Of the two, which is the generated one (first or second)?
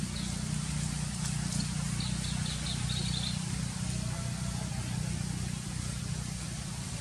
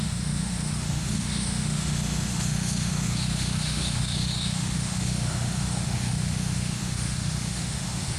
second